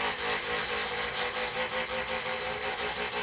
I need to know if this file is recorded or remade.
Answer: recorded